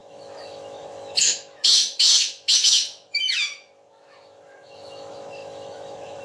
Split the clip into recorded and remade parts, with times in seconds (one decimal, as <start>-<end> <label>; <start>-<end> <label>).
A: 0.0-6.2 remade